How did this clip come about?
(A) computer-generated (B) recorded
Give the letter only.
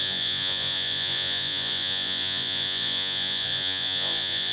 A